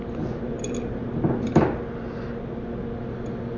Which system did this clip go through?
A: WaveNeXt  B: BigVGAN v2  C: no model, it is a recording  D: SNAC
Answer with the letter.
C